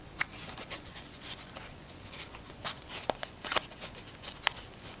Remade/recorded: remade